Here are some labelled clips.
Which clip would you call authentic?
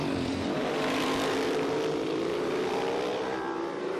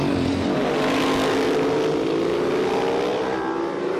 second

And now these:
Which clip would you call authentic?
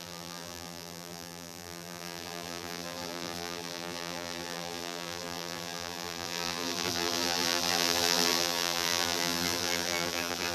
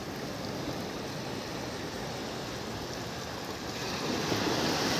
second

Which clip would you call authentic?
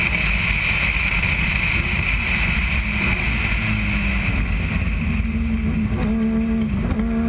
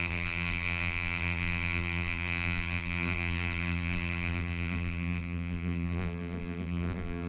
first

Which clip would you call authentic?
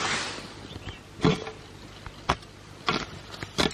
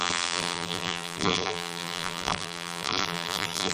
first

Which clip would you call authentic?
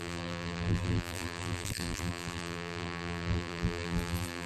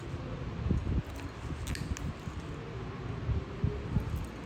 second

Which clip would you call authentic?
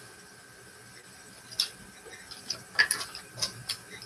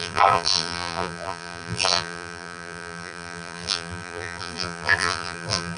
first